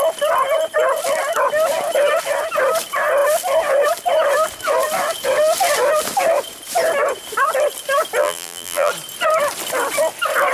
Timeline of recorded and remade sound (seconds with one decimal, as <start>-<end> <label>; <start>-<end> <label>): 0.0-8.2 recorded; 8.2-8.9 remade; 8.9-10.5 recorded